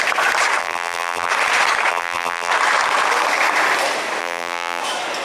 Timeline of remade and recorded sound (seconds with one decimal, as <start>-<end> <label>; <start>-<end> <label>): 0.0-0.6 recorded; 0.6-1.3 remade; 1.3-1.9 recorded; 1.9-2.5 remade; 2.5-4.2 recorded; 4.2-4.8 remade; 4.8-5.2 recorded